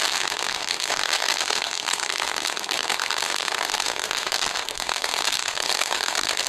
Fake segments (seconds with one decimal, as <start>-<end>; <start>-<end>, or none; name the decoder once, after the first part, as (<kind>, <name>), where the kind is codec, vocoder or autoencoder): 0.0-6.5 (codec, SNAC)